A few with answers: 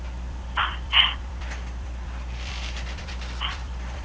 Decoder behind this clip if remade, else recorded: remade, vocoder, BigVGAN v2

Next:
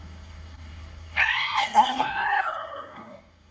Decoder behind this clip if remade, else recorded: remade, codec, SNAC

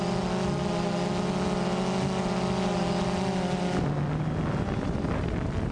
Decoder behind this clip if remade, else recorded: recorded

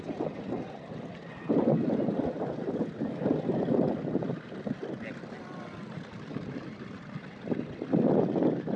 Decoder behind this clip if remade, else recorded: recorded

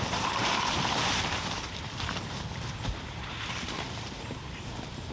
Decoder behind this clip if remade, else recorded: remade, vocoder, BigVGAN v2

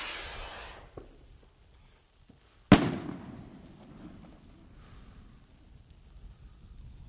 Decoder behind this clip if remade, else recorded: recorded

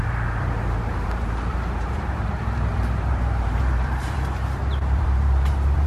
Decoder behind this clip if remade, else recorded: remade, vocoder, BigVGAN v2